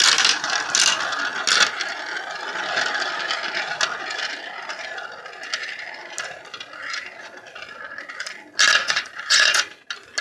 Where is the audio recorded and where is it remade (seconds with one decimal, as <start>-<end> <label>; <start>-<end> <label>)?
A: 0.0-8.8 recorded; 8.8-9.7 remade; 9.7-10.2 recorded